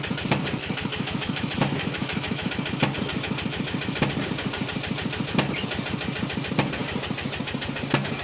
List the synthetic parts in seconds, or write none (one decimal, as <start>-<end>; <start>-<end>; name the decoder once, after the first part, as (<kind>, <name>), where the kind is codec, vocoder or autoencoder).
0.6-2.5 (autoencoder, DAC-VAE)